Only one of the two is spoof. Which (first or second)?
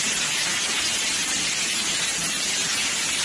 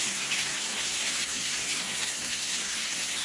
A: second